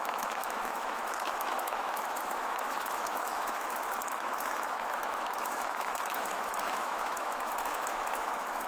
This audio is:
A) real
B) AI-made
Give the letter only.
B